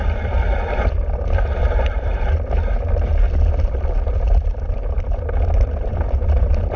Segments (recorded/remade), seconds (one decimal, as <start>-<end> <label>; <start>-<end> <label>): 0.0-2.1 remade; 2.1-3.5 recorded; 3.5-6.8 remade